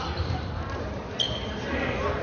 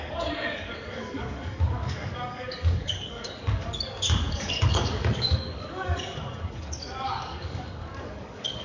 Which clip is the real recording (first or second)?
first